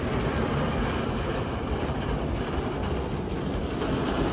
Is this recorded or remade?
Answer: remade